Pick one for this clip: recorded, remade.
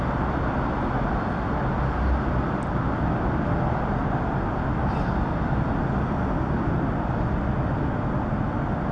recorded